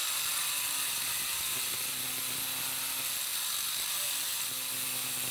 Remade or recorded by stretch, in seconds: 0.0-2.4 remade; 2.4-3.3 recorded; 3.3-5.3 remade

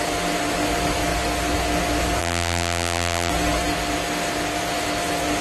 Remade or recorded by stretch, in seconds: 0.0-2.2 recorded; 2.2-3.3 remade; 3.3-5.4 recorded